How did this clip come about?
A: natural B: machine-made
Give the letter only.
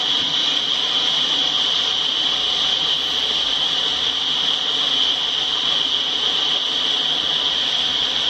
A